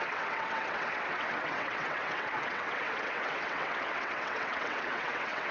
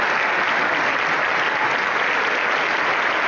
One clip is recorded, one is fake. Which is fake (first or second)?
first